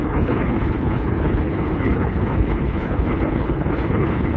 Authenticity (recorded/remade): remade